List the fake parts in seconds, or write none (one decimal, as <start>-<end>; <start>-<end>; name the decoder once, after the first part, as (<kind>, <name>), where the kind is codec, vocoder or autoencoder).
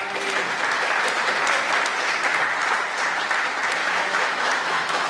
3.8-5.1 (autoencoder, DAC-VAE)